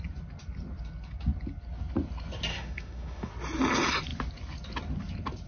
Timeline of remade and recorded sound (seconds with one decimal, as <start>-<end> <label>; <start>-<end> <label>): 0.0-2.5 recorded; 2.5-3.3 remade; 3.3-5.5 recorded